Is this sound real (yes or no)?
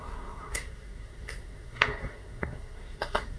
no